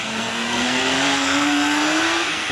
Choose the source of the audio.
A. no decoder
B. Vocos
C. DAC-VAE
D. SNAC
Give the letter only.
D